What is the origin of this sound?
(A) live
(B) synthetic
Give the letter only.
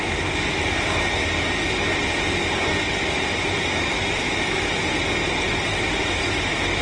A